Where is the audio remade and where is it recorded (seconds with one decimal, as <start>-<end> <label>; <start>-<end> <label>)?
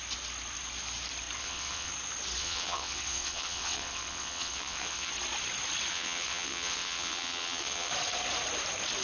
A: 0.0-1.4 recorded; 1.4-1.9 remade; 1.9-2.4 recorded; 2.4-5.1 remade; 5.1-5.9 recorded; 5.9-7.9 remade; 7.9-9.0 recorded